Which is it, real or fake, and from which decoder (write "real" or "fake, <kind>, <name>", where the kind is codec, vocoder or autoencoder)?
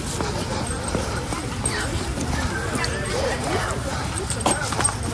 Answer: real